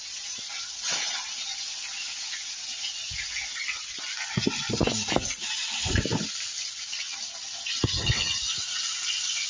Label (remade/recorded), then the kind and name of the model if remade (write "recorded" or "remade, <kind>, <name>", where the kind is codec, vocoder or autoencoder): recorded